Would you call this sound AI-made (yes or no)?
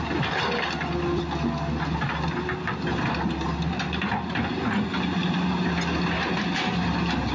no